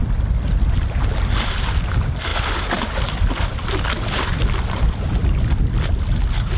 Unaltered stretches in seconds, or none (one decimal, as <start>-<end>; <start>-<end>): 0.0-6.6